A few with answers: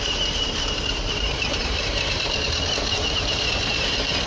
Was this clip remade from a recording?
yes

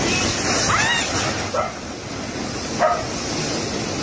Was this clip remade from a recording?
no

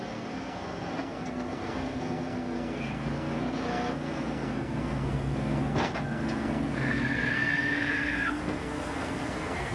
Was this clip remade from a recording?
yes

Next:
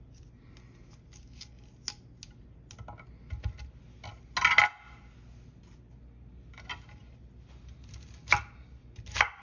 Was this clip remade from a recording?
no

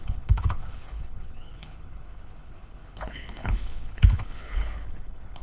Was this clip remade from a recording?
yes